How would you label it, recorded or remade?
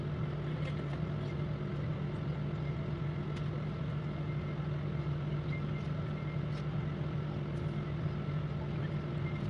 recorded